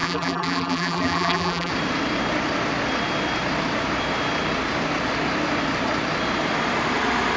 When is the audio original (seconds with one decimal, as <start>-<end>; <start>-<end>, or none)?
1.7-7.4